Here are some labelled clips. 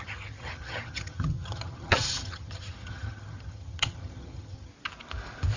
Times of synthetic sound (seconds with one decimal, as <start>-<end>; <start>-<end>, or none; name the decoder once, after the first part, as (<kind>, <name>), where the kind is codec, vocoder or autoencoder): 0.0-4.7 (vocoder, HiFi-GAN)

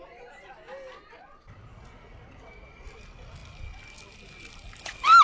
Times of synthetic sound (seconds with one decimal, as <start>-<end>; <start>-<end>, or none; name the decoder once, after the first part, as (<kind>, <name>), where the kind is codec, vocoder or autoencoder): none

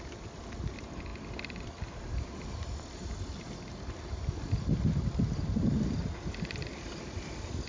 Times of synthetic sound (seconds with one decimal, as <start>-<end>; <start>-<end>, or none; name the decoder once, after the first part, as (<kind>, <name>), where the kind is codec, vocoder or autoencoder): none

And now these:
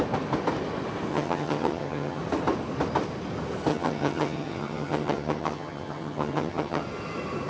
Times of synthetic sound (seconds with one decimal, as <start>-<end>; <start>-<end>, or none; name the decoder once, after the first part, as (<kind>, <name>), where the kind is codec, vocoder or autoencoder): 1.1-2.2 (vocoder, HiFi-GAN); 3.7-6.8

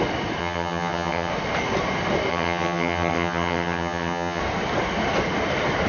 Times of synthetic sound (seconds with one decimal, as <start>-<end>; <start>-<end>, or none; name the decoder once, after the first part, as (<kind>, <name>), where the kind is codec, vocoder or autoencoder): 0.4-1.3 (vocoder, HiFi-GAN); 2.3-4.4